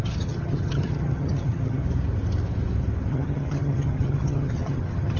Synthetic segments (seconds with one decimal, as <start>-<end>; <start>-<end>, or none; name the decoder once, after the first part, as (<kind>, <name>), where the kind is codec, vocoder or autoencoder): 0.0-1.8 (vocoder, HiFi-GAN); 3.1-5.2